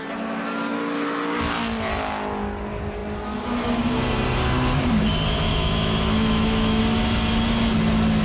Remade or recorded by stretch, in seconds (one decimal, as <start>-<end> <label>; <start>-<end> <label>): 0.0-5.5 recorded; 5.5-6.8 remade; 6.8-8.2 recorded